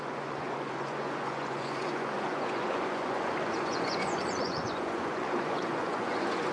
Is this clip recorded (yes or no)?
no